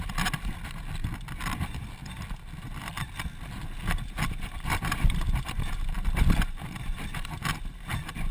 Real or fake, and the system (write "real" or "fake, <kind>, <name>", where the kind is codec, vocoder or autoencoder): real